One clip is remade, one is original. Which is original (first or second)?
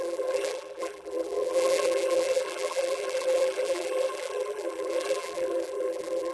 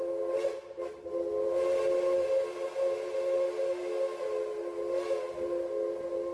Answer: second